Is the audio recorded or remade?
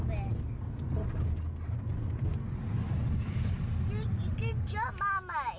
recorded